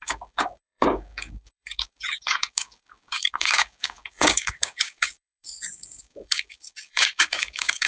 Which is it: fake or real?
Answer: fake